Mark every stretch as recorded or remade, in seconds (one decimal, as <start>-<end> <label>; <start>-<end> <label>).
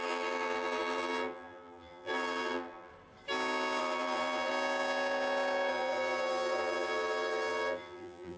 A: 0.0-2.9 remade; 2.9-3.8 recorded; 3.8-4.5 remade; 4.5-5.7 recorded; 5.7-8.4 remade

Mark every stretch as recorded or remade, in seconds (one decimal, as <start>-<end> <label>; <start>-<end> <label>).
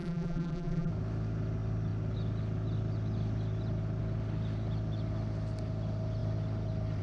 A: 0.0-0.9 remade; 0.9-7.0 recorded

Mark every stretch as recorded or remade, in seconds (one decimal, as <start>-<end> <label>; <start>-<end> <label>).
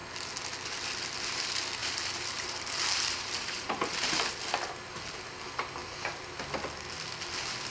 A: 0.0-1.8 recorded; 1.8-4.2 remade; 4.2-5.8 recorded; 5.8-6.3 remade; 6.3-7.7 recorded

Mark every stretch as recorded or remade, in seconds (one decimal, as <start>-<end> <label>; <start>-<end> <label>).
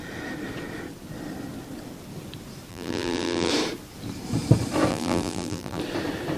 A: 0.0-2.7 recorded; 2.7-3.5 remade; 3.5-4.9 recorded; 4.9-5.8 remade; 5.8-6.4 recorded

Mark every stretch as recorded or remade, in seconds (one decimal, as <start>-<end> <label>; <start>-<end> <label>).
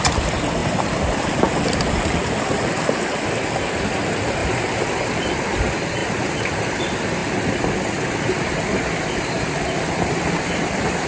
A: 0.0-0.6 recorded; 0.6-3.4 remade; 3.4-4.4 recorded; 4.4-5.6 remade; 5.6-6.0 recorded; 6.0-6.8 remade; 6.8-11.1 recorded